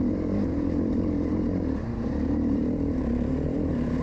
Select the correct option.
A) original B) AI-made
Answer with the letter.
B